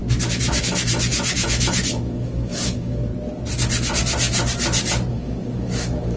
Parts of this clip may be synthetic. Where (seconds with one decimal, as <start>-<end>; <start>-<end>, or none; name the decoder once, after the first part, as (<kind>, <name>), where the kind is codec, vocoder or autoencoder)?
0.6-3.1 (autoencoder, DAC-VAE); 5.1-6.2